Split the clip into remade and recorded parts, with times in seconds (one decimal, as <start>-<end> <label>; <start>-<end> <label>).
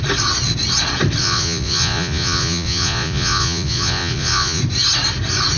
0.0-1.2 recorded; 1.2-4.6 remade; 4.6-5.6 recorded